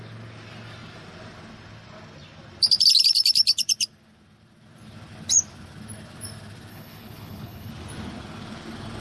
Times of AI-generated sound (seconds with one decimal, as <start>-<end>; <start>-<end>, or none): 6.7-7.7